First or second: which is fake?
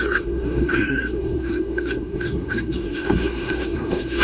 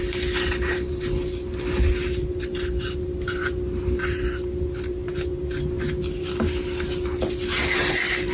first